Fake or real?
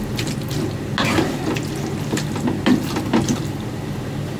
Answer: real